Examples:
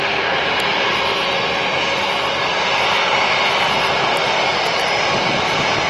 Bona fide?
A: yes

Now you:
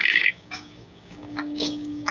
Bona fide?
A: no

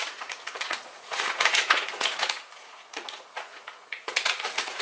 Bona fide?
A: no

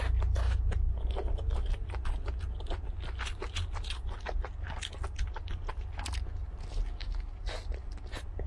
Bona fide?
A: yes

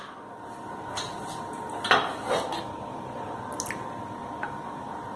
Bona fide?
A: yes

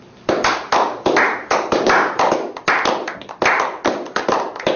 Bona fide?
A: yes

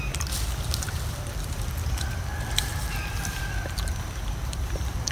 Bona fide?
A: no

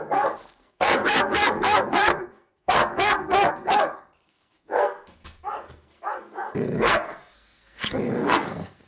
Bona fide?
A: no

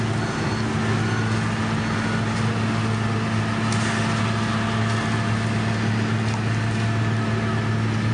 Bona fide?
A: yes